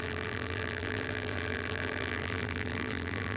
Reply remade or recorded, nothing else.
remade